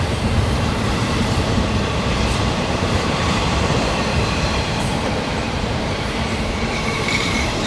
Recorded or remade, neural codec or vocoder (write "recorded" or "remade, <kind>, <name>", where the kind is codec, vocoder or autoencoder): remade, vocoder, BigVGAN v2